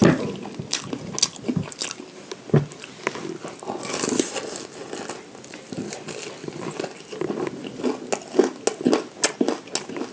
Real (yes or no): yes